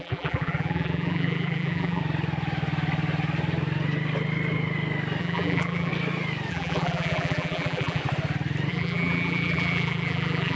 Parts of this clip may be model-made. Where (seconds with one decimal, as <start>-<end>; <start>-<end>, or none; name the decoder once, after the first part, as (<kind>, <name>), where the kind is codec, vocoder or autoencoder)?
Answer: 0.0-2.0 (vocoder, BigVGAN v2); 5.2-5.9; 6.5-8.0; 8.7-10.6